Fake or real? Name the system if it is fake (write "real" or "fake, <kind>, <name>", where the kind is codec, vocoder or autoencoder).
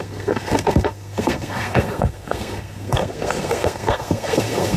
fake, codec, SNAC